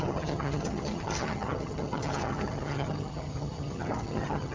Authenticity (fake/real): fake